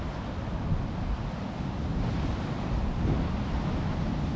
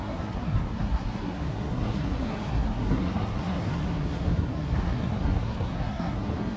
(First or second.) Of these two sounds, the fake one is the second